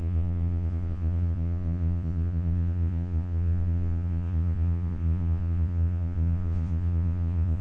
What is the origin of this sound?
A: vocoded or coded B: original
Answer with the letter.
A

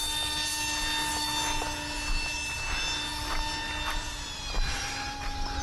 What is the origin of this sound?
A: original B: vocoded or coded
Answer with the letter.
A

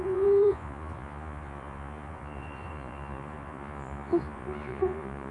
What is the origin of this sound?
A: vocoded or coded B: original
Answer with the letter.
A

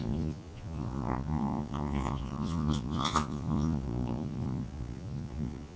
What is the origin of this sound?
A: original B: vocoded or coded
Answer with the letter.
B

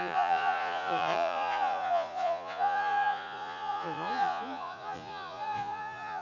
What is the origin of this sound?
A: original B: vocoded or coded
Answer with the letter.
B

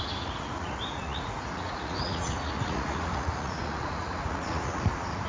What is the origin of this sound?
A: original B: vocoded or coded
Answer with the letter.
B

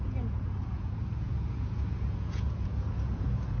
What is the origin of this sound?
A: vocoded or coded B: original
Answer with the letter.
A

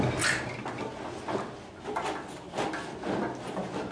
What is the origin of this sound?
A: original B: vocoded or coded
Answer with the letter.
A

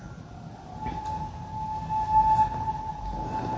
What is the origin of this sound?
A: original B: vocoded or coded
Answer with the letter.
A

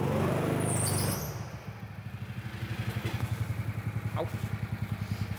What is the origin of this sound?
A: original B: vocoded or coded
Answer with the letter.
A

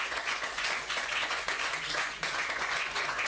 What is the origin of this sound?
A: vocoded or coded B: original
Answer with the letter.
A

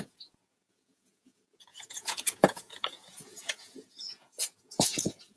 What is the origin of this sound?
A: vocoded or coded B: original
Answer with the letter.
A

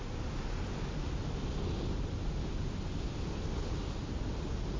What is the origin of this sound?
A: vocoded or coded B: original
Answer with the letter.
B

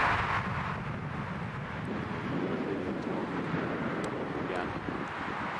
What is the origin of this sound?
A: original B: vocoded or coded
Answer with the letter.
A